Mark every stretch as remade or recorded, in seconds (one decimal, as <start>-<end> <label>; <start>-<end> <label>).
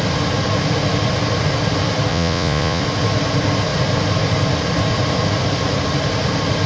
0.0-2.1 recorded; 2.1-2.8 remade; 2.8-6.7 recorded